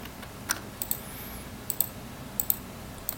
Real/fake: real